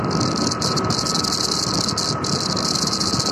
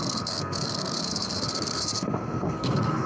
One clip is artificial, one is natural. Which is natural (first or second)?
first